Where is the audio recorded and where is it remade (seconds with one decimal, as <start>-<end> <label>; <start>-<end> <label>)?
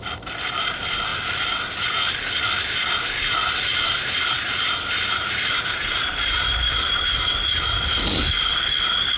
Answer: 0.0-1.1 recorded; 1.1-1.7 remade; 1.7-3.4 recorded; 3.4-7.3 remade; 7.3-9.2 recorded